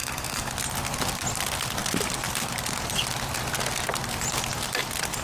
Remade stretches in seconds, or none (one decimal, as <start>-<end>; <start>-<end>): 0.0-0.5